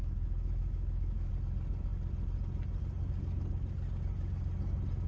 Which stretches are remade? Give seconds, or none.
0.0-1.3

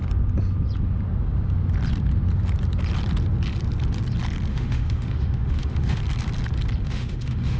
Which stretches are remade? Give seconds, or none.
4.5-6.0; 6.8-7.6

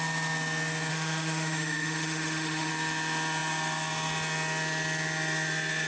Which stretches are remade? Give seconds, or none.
0.9-2.7

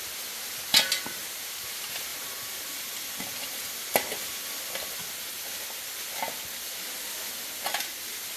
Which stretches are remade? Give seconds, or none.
none

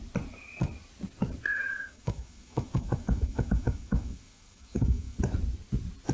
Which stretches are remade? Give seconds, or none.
1.5-5.2

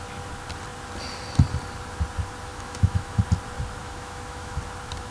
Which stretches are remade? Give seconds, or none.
2.5-3.2; 3.8-4.6

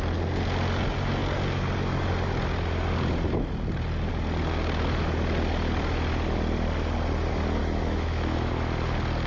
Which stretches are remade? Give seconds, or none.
7.6-8.5